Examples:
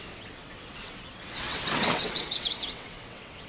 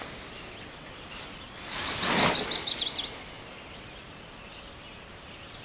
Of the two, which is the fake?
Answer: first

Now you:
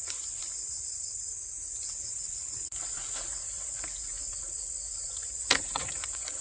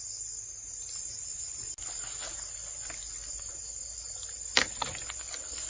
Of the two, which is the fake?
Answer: first